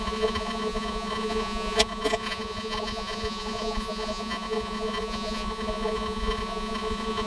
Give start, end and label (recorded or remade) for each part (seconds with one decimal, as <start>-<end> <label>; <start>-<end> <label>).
0.0-7.3 remade

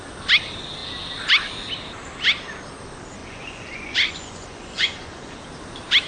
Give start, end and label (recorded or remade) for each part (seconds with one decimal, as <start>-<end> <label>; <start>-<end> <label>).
0.0-3.2 recorded; 3.2-5.4 remade; 5.4-6.1 recorded